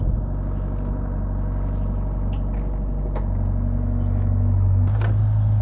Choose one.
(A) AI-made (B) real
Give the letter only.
B